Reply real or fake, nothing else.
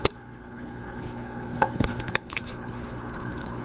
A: fake